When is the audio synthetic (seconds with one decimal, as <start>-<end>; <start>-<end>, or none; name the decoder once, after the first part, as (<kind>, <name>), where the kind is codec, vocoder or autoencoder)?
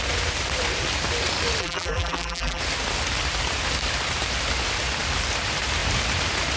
1.6-2.6 (vocoder, BigVGAN v2)